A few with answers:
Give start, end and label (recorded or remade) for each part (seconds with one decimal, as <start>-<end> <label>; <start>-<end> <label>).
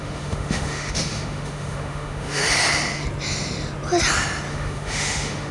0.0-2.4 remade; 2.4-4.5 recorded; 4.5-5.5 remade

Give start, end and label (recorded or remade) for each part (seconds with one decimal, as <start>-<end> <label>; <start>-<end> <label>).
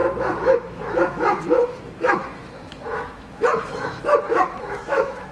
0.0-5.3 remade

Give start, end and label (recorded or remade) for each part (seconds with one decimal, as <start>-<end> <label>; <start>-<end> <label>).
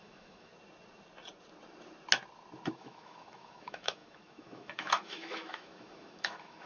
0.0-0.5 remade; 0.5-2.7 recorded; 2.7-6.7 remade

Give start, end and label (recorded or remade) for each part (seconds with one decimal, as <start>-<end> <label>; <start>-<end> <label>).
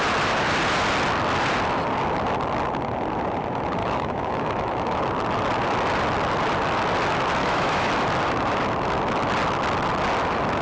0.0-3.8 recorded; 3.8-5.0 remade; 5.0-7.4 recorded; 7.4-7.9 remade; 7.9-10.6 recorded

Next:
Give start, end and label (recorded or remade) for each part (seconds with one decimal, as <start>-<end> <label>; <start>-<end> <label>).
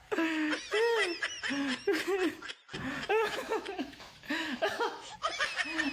0.0-3.1 recorded; 3.1-5.1 remade; 5.1-5.9 recorded